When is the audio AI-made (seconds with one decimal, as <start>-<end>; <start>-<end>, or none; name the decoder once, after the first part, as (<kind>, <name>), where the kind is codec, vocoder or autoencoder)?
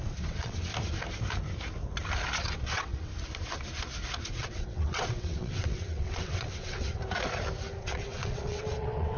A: 0.0-0.7 (vocoder, WaveNeXt); 2.4-3.1; 4.3-7.0; 7.8-9.2